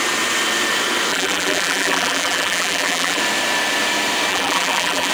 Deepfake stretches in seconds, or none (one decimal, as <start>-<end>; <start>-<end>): 1.1-3.2; 4.3-5.1